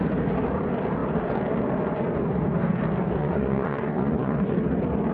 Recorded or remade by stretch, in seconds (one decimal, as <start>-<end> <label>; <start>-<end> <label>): 0.0-3.2 recorded; 3.2-4.5 remade; 4.5-5.1 recorded